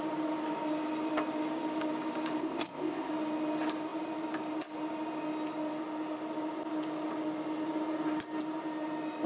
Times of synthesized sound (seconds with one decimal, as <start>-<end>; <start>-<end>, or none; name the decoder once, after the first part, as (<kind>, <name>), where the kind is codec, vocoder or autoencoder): 2.4-3.1 (codec, ZipCodec)